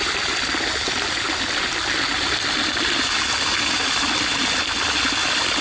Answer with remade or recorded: recorded